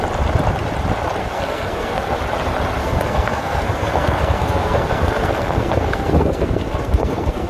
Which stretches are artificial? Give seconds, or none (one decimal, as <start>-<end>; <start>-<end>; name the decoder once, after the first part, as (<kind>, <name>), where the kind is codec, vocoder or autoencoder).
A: 1.2-2.2 (codec, SNAC); 2.8-7.5